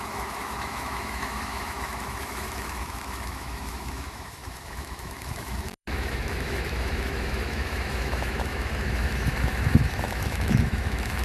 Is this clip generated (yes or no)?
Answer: yes